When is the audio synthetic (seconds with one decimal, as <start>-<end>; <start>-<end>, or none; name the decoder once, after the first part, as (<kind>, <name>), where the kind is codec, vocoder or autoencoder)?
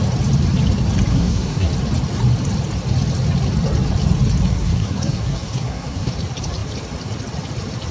1.1-1.7 (codec, SNAC); 4.5-6.1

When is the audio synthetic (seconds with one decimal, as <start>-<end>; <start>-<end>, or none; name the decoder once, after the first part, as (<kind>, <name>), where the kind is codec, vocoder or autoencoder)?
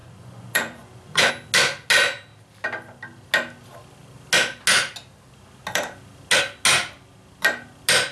0.0-1.3 (vocoder, Vocos)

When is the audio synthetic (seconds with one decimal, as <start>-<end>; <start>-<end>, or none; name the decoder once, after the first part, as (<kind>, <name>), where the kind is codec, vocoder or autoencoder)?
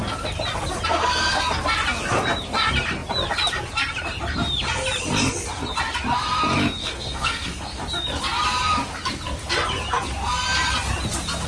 0.9-1.4 (codec, SNAC); 6.8-7.8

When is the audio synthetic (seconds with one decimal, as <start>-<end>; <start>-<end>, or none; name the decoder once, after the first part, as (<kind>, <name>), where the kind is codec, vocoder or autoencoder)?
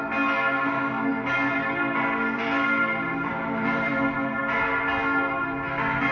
1.1-4.4 (vocoder, BigVGAN v2)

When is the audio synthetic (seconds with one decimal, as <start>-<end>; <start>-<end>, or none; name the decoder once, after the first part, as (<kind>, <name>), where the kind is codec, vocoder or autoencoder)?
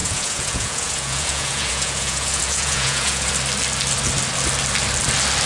0.0-3.3 (vocoder, Vocos)